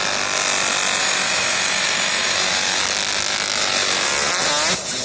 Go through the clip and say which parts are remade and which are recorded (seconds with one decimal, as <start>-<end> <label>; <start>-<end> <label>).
0.0-1.0 recorded; 1.0-2.8 remade; 2.8-5.0 recorded